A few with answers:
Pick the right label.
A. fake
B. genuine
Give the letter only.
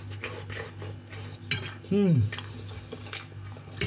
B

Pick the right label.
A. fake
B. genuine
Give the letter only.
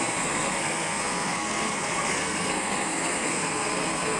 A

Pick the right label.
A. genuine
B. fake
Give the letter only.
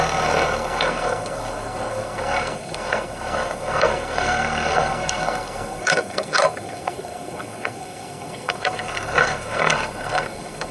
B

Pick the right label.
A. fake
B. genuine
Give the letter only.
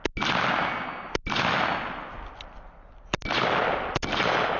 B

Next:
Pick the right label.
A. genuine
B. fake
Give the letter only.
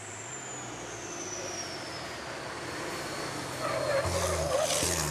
A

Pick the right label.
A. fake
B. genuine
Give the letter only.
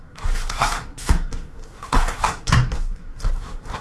A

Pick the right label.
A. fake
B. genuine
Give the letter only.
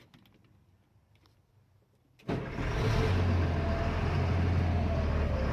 B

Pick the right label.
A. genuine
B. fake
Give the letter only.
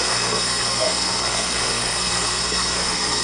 B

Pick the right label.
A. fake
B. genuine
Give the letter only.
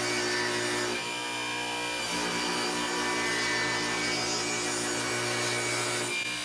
B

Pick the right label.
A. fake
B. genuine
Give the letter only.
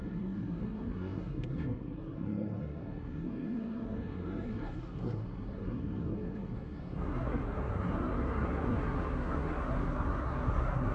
A